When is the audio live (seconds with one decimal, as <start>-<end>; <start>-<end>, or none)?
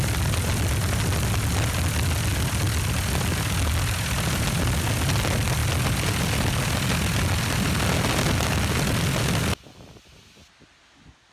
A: 0.0-11.3